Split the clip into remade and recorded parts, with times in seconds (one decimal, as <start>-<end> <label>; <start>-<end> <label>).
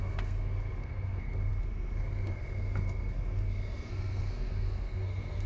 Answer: 0.0-5.5 remade